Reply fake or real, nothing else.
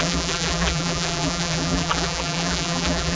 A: fake